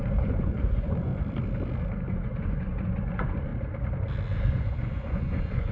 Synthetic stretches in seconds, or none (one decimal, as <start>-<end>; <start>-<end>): 0.0-1.1; 2.1-3.5; 4.5-5.7